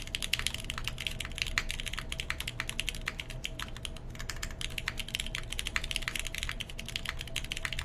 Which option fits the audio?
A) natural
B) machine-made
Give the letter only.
A